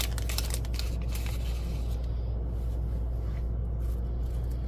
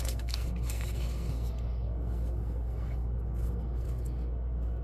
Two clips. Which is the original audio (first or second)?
first